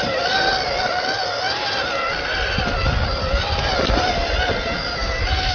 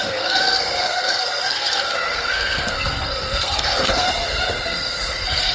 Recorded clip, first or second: first